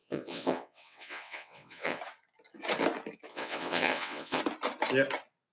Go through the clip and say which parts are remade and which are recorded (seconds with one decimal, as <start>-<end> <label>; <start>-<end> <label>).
0.0-2.0 remade; 2.0-3.3 recorded; 3.3-4.4 remade; 4.4-5.5 recorded